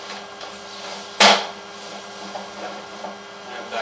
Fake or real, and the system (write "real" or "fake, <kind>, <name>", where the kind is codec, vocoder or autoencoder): real